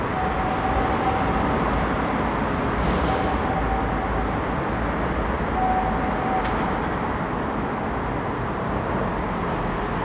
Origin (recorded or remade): recorded